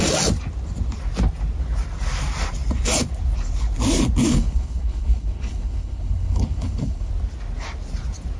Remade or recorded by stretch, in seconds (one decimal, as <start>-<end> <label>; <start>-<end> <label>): 0.0-4.3 recorded; 4.3-7.1 remade; 7.1-8.4 recorded

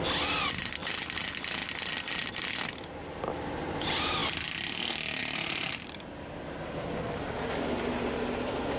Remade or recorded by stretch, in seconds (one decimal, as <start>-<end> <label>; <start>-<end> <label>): 0.0-8.8 recorded

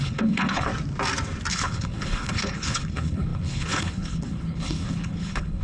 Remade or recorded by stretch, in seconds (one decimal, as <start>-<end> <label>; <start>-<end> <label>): 0.0-0.7 remade; 0.7-1.5 recorded; 1.5-5.6 remade

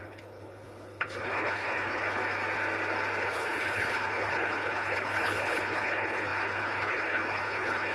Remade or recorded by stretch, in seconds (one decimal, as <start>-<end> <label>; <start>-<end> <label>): 0.0-2.2 remade; 2.2-3.2 recorded; 3.2-7.9 remade

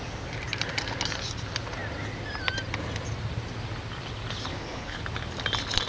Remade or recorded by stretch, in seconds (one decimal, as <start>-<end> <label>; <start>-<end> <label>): 0.0-4.5 recorded; 4.5-5.0 remade; 5.0-5.9 recorded